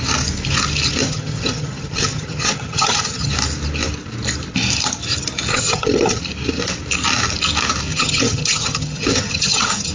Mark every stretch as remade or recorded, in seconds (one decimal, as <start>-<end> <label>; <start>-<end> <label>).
0.0-1.0 recorded; 1.0-3.3 remade; 3.3-5.5 recorded; 5.5-6.2 remade; 6.2-7.9 recorded; 7.9-9.9 remade